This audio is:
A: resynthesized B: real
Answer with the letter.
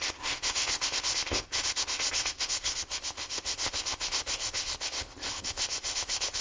A